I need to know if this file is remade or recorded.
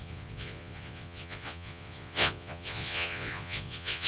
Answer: remade